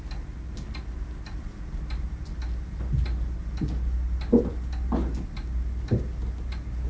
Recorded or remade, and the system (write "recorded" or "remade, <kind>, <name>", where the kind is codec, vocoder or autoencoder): recorded